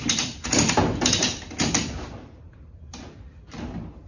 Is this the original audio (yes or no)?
yes